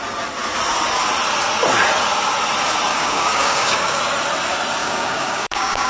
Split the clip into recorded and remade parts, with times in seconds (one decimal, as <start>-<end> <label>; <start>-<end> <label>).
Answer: 0.0-2.9 recorded; 2.9-4.0 remade; 4.0-4.8 recorded; 4.8-5.9 remade